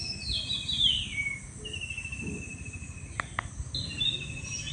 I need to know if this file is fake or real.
real